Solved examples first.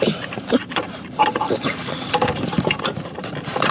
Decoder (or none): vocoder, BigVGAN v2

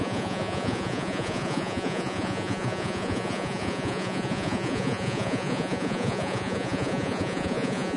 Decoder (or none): vocoder, Vocos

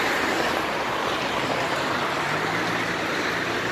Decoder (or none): none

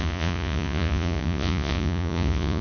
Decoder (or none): vocoder, Vocos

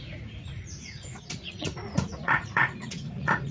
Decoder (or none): vocoder, Vocos